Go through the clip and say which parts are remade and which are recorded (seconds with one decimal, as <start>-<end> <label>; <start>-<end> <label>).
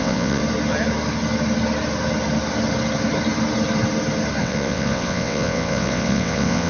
0.0-0.4 remade; 0.4-4.4 recorded; 4.4-6.7 remade